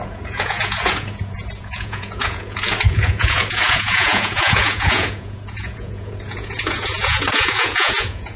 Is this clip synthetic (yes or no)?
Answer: yes